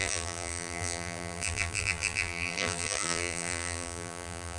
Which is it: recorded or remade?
remade